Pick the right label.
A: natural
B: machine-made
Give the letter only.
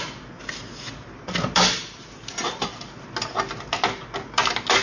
A